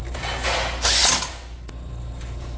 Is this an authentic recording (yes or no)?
yes